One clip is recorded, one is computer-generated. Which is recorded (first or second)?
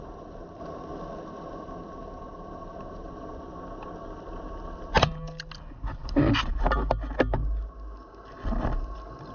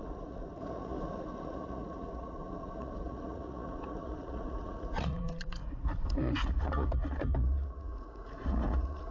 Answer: first